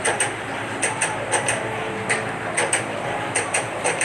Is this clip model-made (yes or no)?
yes